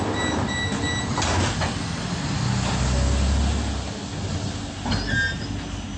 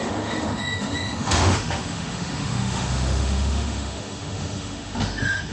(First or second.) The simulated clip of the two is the second